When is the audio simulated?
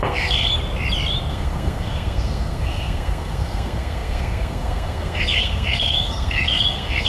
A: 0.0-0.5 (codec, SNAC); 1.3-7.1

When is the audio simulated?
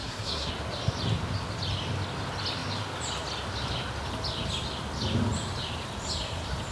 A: 0.0-0.5 (codec, SNAC)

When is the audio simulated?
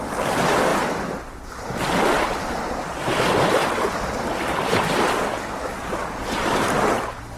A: none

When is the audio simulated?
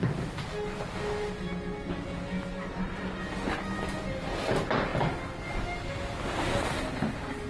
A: none